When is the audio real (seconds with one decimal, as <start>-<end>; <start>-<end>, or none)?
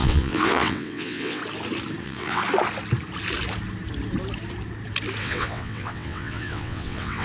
1.4-2.0; 2.4-5.2